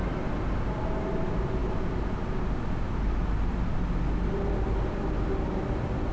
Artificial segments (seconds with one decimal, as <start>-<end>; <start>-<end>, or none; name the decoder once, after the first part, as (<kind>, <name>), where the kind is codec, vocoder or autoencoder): none

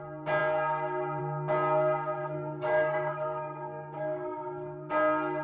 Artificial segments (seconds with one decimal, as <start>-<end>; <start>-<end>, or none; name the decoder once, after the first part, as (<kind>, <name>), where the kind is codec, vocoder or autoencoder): 2.2-4.9 (codec, SNAC)

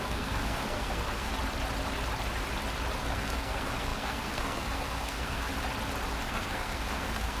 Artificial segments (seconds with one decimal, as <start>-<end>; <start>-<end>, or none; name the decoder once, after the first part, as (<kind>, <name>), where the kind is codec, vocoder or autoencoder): 0.0-1.3 (codec, SNAC); 3.0-5.5; 6.2-7.4

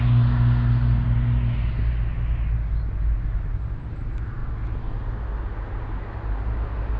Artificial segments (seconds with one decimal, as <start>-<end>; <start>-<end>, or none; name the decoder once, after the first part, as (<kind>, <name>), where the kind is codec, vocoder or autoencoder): none

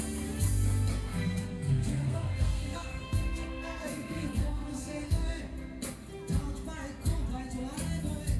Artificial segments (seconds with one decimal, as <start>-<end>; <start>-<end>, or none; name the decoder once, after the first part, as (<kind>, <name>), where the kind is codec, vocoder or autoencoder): 1.1-5.4 (codec, SNAC)

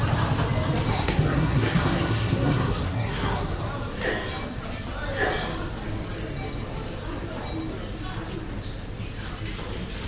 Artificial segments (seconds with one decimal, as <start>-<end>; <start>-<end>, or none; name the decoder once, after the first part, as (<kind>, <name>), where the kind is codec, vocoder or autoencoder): 0.9-3.6 (codec, SNAC)

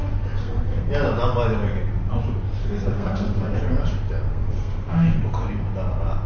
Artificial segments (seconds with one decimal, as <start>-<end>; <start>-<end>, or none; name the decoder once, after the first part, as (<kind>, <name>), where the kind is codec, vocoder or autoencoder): 0.4-0.9 (codec, SNAC); 2.6-3.6; 4.3-5.2

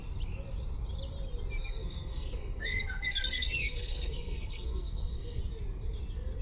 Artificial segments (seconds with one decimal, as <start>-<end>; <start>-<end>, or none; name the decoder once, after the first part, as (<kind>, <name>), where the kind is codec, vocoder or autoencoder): 1.6-5.4 (codec, SNAC)